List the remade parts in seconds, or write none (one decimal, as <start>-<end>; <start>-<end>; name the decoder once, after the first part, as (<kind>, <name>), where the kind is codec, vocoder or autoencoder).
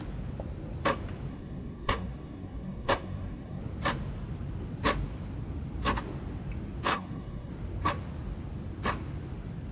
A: 1.3-3.6 (codec, SNAC); 6.9-7.5